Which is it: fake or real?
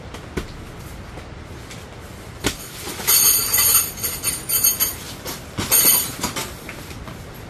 real